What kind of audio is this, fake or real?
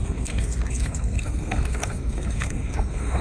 fake